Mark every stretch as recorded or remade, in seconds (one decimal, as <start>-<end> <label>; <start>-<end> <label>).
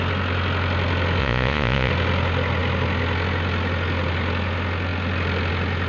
0.0-1.2 recorded; 1.2-1.9 remade; 1.9-5.9 recorded